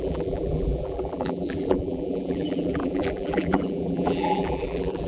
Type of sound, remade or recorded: remade